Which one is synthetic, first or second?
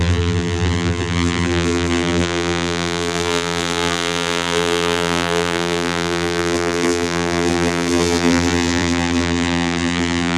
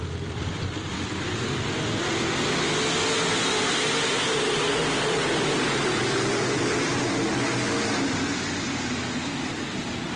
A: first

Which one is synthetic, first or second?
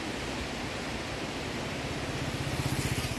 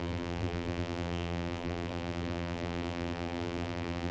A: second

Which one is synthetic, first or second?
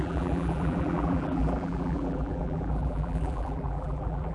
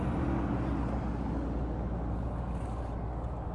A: first